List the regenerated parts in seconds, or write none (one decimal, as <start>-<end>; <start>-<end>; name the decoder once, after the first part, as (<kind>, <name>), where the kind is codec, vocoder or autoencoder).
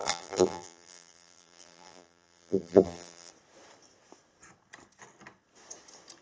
0.0-3.3 (vocoder, BigVGAN v2)